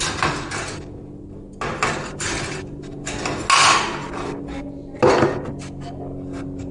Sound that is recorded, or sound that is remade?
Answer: recorded